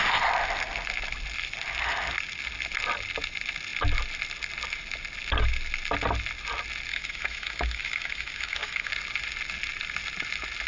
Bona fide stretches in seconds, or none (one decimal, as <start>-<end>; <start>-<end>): 0.0-6.9; 8.9-10.7